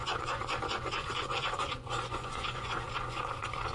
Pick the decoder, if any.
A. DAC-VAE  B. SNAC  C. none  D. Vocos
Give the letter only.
D